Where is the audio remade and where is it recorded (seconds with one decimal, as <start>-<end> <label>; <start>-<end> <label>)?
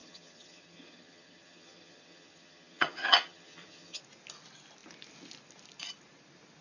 0.0-4.0 remade; 4.0-6.6 recorded